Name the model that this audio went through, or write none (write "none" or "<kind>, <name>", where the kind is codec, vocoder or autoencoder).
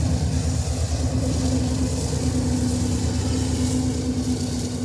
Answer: none